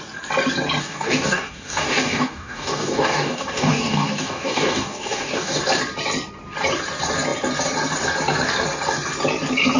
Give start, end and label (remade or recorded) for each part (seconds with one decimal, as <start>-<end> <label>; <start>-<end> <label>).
0.0-0.8 recorded; 0.8-5.6 remade; 5.6-9.8 recorded